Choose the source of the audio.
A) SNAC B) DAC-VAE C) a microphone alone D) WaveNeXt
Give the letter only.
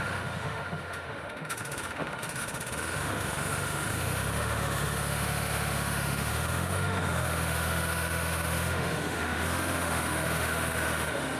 B